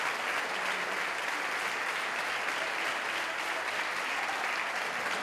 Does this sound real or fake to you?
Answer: real